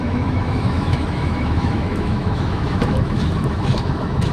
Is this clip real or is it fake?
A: fake